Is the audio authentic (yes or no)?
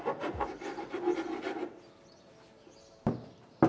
yes